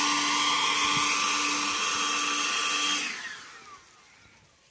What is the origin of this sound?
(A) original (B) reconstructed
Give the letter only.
A